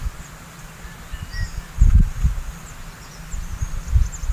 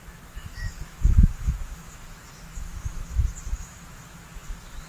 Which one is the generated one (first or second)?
second